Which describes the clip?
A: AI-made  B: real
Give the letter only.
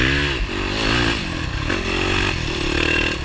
B